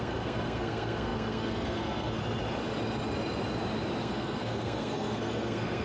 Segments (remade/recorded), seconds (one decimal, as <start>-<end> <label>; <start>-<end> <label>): 0.0-2.2 remade; 2.2-4.0 recorded; 4.0-5.8 remade